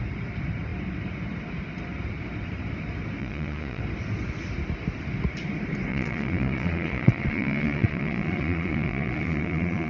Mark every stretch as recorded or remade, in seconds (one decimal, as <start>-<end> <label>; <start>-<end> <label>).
0.0-3.2 recorded; 3.2-3.8 remade; 3.8-5.9 recorded; 5.9-9.9 remade